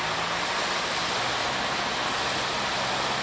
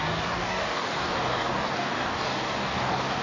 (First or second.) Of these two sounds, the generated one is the second